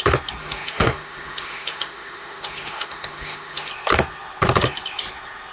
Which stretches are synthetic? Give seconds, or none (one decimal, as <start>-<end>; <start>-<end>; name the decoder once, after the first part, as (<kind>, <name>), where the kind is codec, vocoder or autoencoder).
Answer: 0.4-3.7 (autoencoder, DAC-VAE)